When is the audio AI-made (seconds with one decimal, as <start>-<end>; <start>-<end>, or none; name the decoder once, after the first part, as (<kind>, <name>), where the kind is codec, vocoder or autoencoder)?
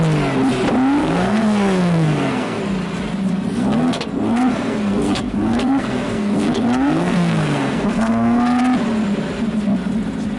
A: 1.0-2.6 (codec, SNAC); 3.5-8.6